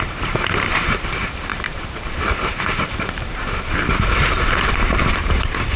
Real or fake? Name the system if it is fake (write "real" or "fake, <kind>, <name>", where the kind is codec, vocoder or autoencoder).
fake, vocoder, BigVGAN v2